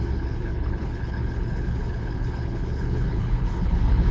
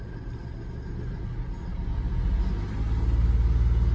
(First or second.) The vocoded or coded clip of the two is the first